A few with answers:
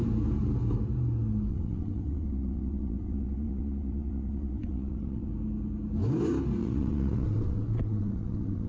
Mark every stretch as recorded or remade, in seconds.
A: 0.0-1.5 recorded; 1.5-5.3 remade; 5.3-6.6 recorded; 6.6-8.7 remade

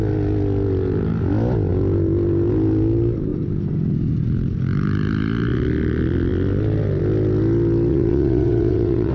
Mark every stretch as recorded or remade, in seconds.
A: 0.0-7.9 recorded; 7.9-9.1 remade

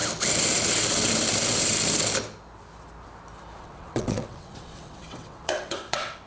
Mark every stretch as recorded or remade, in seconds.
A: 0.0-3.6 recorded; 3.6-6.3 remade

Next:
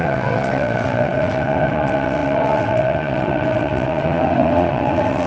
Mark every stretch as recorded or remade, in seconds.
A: 0.0-5.3 remade

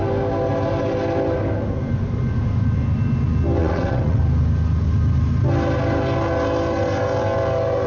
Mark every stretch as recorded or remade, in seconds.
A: 0.0-3.6 recorded; 3.6-4.2 remade; 4.2-7.9 recorded

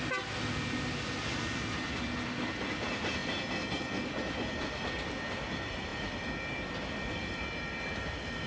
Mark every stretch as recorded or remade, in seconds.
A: 0.0-8.5 recorded